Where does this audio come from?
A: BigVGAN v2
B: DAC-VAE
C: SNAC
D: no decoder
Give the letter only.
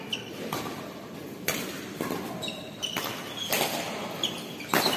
D